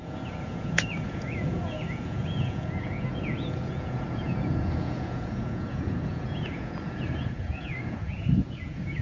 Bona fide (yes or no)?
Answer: no